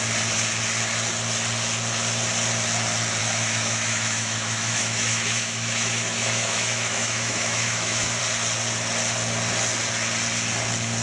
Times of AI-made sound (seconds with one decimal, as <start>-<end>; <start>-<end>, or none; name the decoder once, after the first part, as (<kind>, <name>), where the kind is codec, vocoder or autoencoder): 3.2-8.2 (autoencoder, DAC-VAE)